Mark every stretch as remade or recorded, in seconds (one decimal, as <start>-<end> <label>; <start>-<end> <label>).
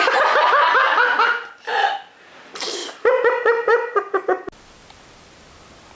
0.0-6.0 recorded